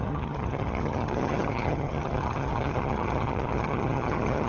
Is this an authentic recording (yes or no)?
no